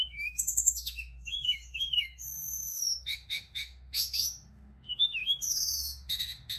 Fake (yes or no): yes